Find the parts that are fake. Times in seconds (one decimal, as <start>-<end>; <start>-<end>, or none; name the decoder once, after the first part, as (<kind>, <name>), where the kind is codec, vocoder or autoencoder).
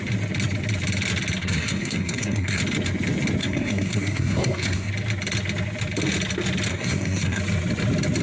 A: 1.4-2.6 (codec, SNAC); 3.4-4.9; 6.7-7.4